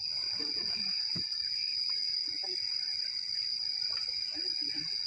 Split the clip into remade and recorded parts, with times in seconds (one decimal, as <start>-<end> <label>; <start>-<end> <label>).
0.0-1.6 recorded; 1.6-5.1 remade